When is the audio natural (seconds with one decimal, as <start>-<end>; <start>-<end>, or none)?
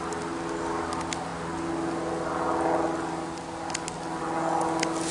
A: 0.0-5.1